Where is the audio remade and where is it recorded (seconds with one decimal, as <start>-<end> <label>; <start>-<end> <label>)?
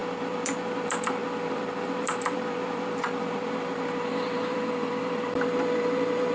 0.0-6.3 remade